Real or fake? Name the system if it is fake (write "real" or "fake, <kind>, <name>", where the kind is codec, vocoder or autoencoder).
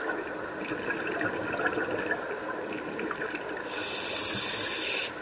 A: real